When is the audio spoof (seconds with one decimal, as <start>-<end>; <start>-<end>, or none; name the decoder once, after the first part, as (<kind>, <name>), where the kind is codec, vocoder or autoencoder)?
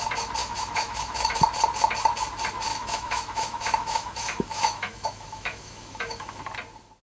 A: 0.4-1.4 (autoencoder, DAC-VAE); 2.7-6.4